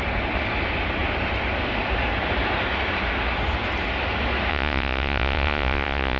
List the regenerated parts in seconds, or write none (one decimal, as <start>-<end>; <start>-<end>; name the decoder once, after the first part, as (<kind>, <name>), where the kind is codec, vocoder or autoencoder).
4.5-6.2 (vocoder, Vocos)